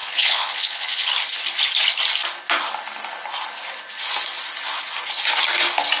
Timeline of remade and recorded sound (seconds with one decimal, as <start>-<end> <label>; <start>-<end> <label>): 0.0-1.1 remade; 1.1-6.0 recorded